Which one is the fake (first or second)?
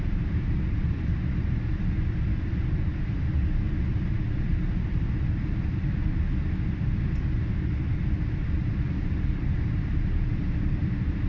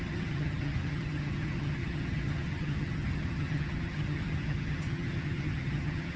second